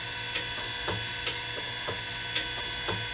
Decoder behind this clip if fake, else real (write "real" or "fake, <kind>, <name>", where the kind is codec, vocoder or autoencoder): real